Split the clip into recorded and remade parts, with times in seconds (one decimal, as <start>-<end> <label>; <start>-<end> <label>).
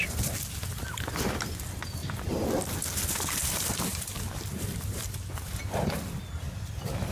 0.0-3.9 recorded; 3.9-5.6 remade; 5.6-7.1 recorded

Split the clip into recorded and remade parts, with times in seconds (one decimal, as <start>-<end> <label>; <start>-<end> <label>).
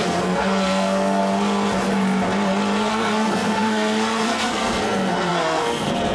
0.0-1.2 remade; 1.2-2.9 recorded; 2.9-6.1 remade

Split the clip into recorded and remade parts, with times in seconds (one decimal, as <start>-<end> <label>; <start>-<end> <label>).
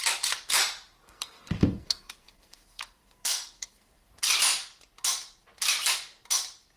0.0-1.0 recorded; 1.0-4.1 remade; 4.1-6.8 recorded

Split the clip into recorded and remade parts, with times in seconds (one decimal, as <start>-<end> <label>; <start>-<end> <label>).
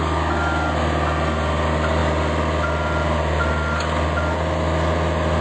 0.0-5.4 recorded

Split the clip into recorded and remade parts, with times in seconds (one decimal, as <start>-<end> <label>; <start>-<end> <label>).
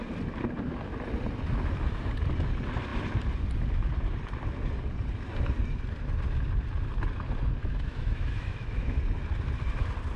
0.0-7.6 recorded; 7.6-9.0 remade; 9.0-10.2 recorded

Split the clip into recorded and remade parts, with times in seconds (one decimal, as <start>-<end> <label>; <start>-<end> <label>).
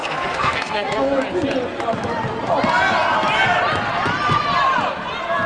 0.0-1.2 remade; 1.2-5.5 recorded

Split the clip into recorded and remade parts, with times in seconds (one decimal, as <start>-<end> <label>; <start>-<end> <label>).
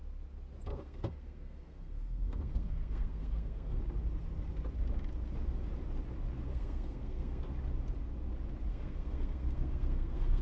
0.0-0.7 recorded; 0.7-3.8 remade; 3.8-6.5 recorded; 6.5-7.4 remade; 7.4-8.7 recorded; 8.7-10.4 remade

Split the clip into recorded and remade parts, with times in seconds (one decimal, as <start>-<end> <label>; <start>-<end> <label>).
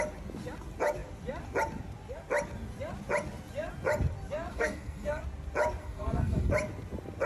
0.0-4.5 recorded; 4.5-5.2 remade; 5.2-5.8 recorded; 5.8-6.5 remade; 6.5-7.3 recorded